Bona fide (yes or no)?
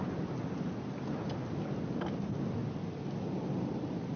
yes